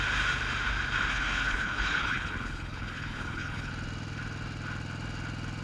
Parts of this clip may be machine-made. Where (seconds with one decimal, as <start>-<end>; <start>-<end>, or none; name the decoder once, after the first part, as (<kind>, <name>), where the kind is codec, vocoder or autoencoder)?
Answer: 1.1-3.7 (codec, HILCodec)